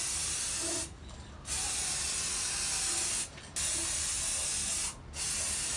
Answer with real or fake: real